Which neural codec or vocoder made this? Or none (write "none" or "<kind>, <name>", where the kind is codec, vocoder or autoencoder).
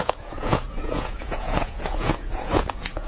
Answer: vocoder, Vocos